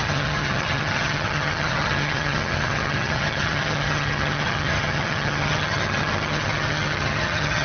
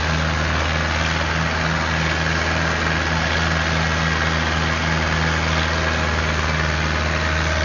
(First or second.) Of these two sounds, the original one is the second